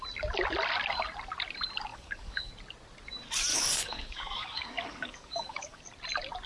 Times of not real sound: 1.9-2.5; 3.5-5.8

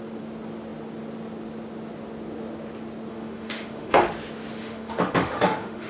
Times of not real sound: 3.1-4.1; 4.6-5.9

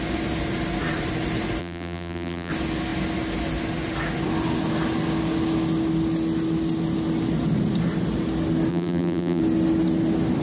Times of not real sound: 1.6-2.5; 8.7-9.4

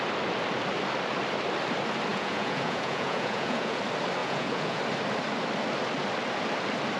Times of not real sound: 2.1-3.8; 4.2-4.8